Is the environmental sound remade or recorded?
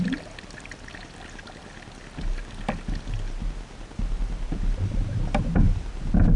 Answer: recorded